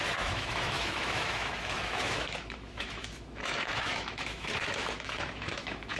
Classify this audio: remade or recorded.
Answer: remade